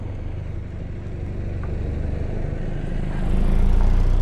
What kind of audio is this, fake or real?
real